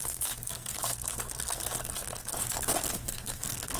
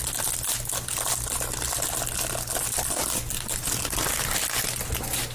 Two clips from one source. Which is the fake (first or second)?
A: first